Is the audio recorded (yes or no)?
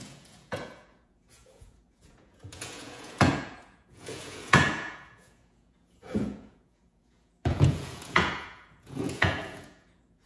no